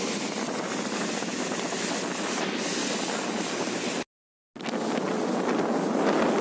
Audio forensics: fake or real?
real